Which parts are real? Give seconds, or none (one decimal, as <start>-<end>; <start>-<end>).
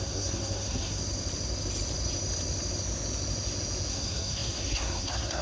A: 1.0-3.9